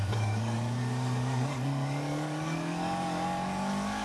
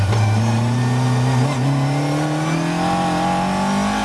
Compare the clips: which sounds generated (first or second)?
first